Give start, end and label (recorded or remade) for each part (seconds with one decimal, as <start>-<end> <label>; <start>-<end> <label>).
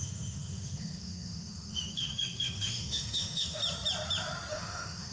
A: 0.0-3.6 remade; 3.6-4.5 recorded; 4.5-5.1 remade